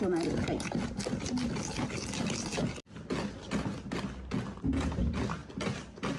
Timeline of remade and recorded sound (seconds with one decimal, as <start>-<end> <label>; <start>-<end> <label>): 0.0-6.2 recorded